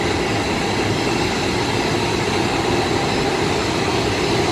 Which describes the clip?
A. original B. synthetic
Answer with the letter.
A